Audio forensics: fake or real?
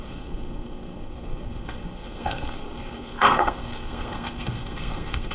fake